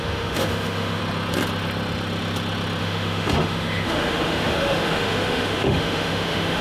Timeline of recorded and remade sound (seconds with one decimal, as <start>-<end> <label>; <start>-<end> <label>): 0.0-1.0 remade; 1.0-2.8 recorded; 2.8-6.6 remade